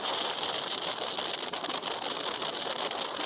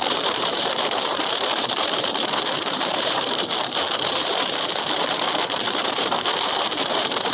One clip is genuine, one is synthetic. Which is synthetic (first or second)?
second